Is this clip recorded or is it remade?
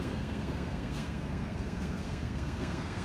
remade